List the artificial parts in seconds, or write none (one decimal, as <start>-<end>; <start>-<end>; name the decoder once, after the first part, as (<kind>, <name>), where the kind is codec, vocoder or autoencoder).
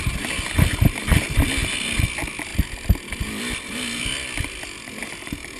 2.5-3.6 (vocoder, BigVGAN v2)